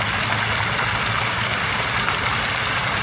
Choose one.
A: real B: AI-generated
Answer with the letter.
A